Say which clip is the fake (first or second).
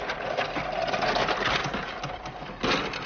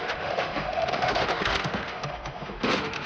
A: second